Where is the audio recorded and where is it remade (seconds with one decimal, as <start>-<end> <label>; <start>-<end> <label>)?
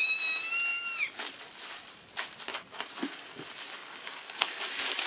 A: 0.0-3.8 recorded; 3.8-4.6 remade; 4.6-5.1 recorded